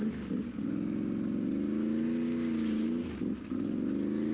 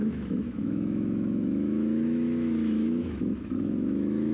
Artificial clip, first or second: second